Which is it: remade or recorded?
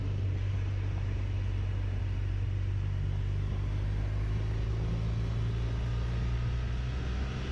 recorded